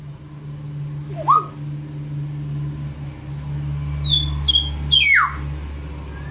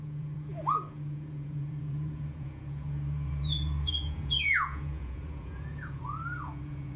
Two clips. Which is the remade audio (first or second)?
second